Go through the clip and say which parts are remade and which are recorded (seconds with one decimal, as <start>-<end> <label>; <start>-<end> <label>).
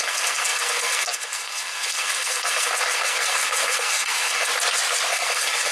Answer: 0.0-4.5 remade; 4.5-5.1 recorded; 5.1-5.7 remade